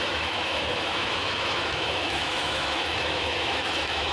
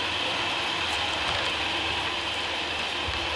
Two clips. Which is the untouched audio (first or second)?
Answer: second